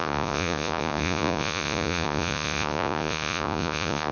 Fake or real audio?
fake